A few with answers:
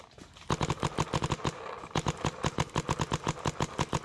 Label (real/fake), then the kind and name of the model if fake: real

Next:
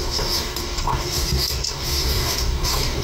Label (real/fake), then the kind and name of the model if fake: fake, codec, DAC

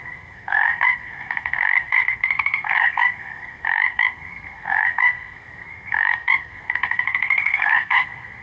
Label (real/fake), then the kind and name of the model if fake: fake, codec, SNAC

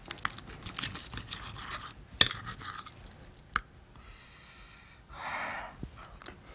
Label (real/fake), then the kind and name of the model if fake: real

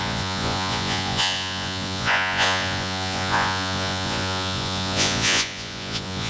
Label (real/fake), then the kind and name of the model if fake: fake, vocoder, Vocos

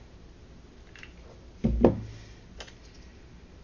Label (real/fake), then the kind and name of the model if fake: real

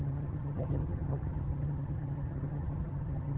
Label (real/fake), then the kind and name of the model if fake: fake, vocoder, HiFi-GAN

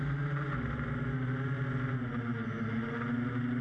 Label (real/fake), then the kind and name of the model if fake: real